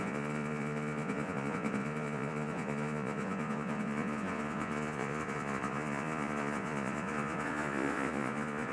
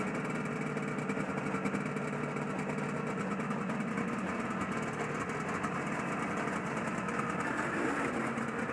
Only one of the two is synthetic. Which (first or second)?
first